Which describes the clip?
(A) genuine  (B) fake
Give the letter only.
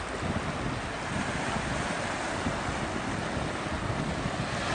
A